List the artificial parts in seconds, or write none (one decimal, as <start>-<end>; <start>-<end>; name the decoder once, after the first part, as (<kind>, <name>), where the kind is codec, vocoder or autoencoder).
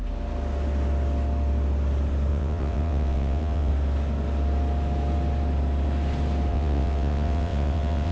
2.3-3.7 (vocoder, WaveNeXt); 6.5-8.1